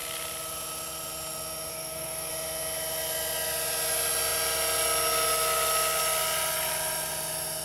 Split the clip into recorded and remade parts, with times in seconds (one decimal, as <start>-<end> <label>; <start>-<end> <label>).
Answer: 0.0-1.7 recorded; 1.7-2.3 remade; 2.3-7.6 recorded